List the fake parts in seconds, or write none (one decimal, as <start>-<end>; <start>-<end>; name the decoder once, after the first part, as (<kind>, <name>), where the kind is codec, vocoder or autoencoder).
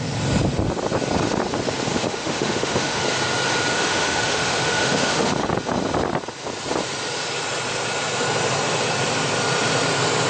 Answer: 1.9-3.0 (autoencoder, DAC-VAE); 3.7-5.3